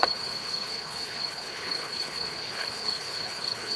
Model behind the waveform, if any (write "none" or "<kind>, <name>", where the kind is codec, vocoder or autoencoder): codec, HILCodec